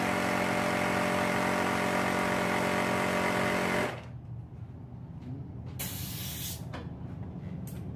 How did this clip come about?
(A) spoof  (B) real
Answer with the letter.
B